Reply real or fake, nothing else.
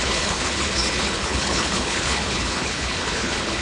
fake